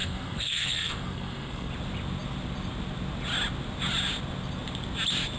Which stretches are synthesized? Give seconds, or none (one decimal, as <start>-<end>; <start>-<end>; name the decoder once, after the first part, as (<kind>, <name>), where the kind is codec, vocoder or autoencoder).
0.0-1.7 (codec, SNAC)